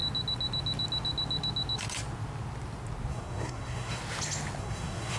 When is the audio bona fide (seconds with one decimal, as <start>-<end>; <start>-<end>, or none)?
0.0-3.1; 4.0-4.6